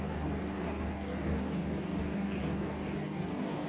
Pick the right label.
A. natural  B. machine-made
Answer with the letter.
B